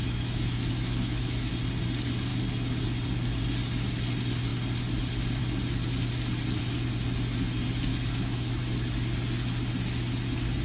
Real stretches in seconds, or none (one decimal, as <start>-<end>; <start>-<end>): 1.5-7.9; 8.6-10.6